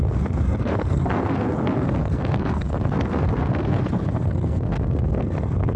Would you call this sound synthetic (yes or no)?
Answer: yes